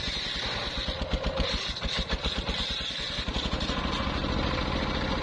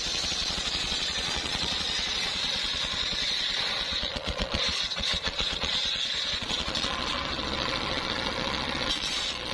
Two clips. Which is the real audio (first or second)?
first